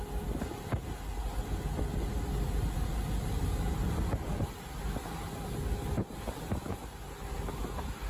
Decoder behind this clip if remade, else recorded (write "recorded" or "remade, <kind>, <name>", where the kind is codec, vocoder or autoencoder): recorded